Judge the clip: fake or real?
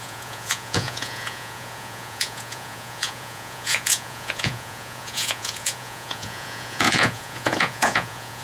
fake